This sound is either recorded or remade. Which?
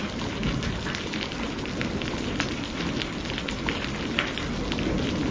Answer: recorded